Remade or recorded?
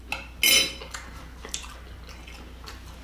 recorded